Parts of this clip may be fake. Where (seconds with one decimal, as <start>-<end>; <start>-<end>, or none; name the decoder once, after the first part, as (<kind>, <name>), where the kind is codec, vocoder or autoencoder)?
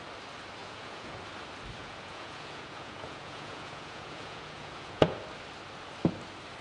0.6-1.2 (vocoder, Vocos); 1.8-5.2